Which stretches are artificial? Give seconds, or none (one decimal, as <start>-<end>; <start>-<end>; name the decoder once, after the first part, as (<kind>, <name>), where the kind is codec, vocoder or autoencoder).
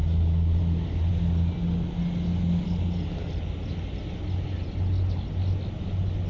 none